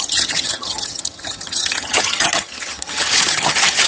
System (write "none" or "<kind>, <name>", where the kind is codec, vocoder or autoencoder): vocoder, HiFi-GAN